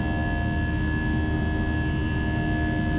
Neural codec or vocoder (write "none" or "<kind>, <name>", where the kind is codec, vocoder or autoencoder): none